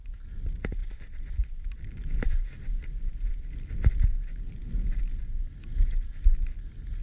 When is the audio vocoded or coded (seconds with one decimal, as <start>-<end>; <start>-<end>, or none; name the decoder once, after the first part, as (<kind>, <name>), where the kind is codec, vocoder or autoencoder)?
none